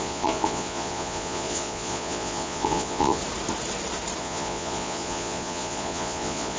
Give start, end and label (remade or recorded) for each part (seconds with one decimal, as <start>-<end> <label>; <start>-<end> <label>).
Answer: 0.0-3.2 remade; 3.2-4.2 recorded; 4.2-6.6 remade